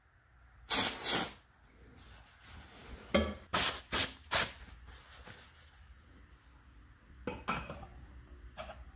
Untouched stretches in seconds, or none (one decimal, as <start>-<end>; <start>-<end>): 0.0-9.0